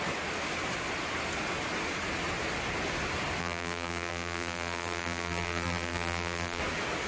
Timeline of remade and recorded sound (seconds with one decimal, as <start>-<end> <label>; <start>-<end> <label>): 0.0-3.4 recorded; 3.4-6.6 remade; 6.6-7.1 recorded